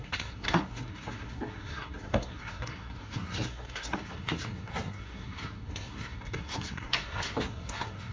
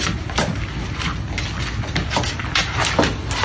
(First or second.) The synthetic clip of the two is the first